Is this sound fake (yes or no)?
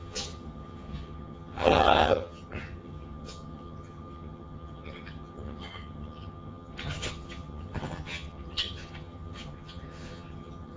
yes